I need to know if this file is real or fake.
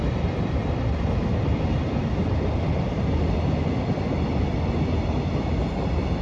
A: real